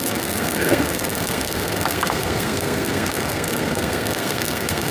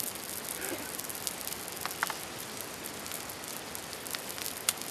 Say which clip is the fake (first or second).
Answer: first